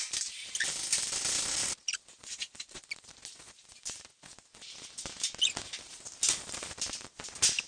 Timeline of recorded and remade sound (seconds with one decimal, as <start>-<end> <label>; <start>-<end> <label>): 0.0-7.7 recorded